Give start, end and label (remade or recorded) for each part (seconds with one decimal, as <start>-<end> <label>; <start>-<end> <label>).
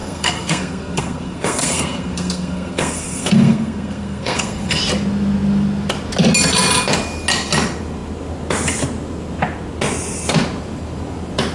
0.0-4.8 remade; 4.8-11.5 recorded